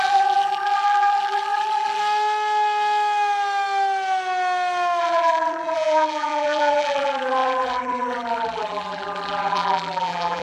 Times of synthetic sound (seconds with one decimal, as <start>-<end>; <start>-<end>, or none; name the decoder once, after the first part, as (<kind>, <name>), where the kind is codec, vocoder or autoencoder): 0.0-2.0 (vocoder, BigVGAN v2); 5.0-10.4